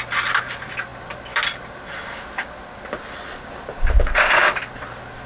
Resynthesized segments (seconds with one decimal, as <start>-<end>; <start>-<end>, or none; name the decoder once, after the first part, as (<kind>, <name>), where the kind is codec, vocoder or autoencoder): none